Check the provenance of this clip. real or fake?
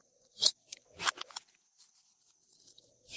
real